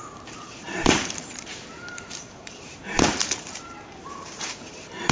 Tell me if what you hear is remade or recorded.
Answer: remade